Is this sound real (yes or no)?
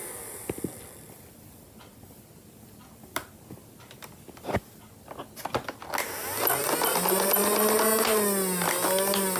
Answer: yes